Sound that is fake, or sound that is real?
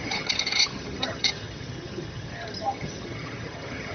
fake